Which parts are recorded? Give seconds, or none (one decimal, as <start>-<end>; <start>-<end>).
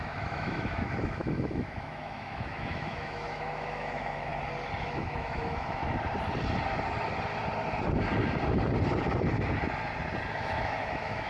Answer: 4.3-4.8; 5.8-10.3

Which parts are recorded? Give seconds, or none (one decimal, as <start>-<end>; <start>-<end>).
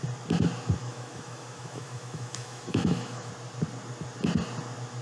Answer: 0.0-0.8; 3.3-5.0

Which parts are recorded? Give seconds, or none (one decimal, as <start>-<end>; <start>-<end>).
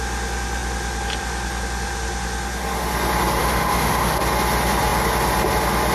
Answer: 0.0-3.4; 4.2-5.9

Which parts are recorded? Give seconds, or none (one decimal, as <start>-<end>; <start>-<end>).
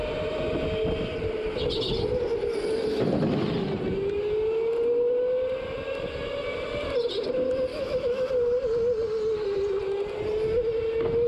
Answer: 0.0-7.7; 8.3-11.3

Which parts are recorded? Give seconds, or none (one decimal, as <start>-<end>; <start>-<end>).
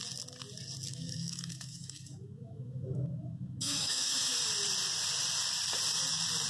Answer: 0.0-0.9; 4.3-6.5